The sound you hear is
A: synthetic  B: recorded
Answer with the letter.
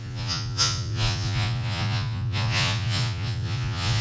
A